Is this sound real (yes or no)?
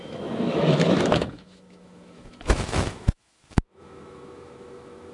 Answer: no